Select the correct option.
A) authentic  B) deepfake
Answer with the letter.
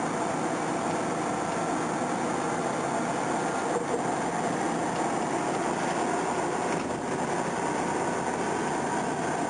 A